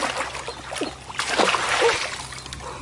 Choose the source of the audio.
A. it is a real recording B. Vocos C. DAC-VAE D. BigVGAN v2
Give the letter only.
A